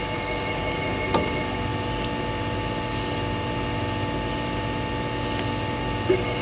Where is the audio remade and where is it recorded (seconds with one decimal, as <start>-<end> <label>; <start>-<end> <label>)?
0.0-6.4 recorded